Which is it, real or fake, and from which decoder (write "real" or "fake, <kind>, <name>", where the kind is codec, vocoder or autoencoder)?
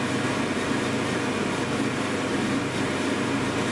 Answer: fake, vocoder, BigVGAN v2